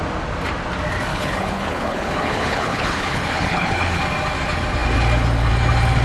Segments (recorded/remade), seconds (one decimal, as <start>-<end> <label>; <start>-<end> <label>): 0.0-1.1 recorded; 1.1-4.0 remade; 4.0-6.0 recorded